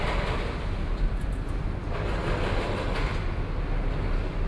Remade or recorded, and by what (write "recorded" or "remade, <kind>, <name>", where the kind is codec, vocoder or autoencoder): recorded